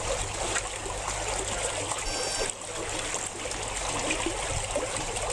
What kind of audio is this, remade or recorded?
recorded